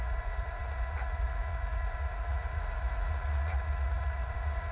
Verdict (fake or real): fake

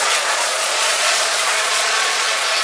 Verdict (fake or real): fake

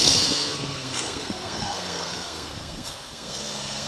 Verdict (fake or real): fake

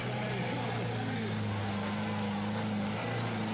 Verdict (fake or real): real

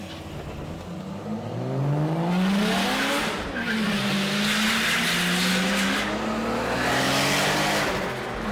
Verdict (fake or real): real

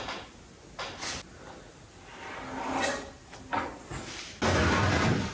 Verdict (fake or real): real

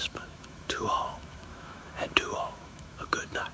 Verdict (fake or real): fake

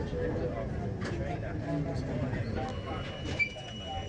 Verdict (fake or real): real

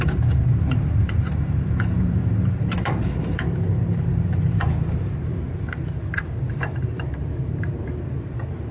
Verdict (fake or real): fake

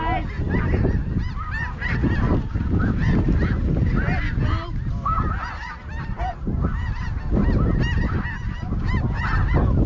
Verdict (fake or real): real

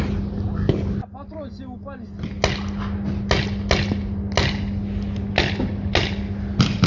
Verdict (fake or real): real